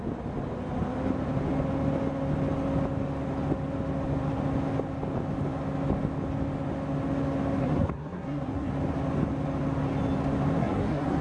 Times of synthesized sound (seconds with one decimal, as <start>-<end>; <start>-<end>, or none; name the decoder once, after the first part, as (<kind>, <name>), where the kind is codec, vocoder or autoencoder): 7.6-8.7 (codec, SNAC); 10.6-11.2